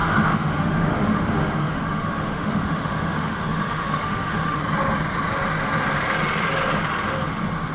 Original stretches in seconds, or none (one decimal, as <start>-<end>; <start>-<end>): 4.6-7.7